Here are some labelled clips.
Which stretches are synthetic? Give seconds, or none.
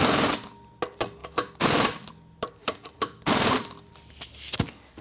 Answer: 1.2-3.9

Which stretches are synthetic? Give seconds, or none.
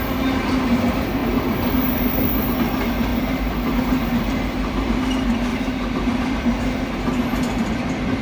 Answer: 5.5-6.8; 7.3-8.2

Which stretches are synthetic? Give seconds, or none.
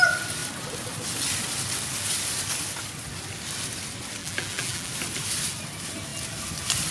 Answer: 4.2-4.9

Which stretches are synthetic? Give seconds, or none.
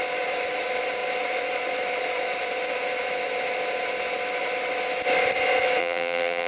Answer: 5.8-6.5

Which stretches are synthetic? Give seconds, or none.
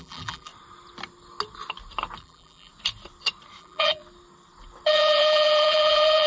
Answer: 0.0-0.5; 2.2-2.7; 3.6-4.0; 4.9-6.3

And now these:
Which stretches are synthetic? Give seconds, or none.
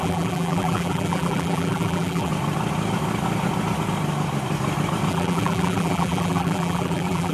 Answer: 0.0-2.3; 5.1-7.3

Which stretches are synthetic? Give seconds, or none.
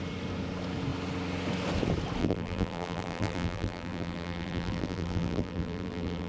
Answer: 2.2-6.3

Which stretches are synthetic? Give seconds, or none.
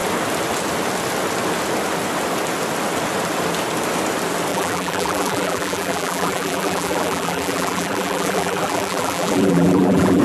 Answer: 4.5-10.2